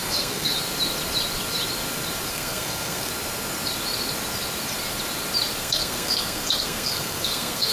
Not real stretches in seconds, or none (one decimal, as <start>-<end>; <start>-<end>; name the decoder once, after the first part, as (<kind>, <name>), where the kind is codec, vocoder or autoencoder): 0.0-0.5 (codec, SNAC); 2.3-3.1; 5.6-7.7